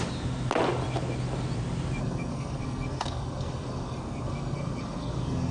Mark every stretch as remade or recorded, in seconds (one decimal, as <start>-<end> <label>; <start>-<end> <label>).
0.0-2.0 recorded; 2.0-5.5 remade